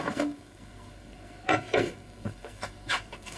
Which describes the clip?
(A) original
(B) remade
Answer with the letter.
B